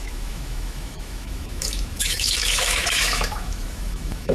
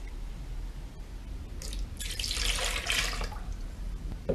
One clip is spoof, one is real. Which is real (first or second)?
second